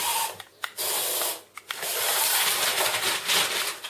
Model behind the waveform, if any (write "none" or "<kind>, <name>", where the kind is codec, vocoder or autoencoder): none